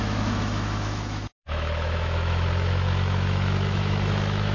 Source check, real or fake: fake